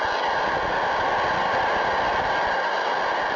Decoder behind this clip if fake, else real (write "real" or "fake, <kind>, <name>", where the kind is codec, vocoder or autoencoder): real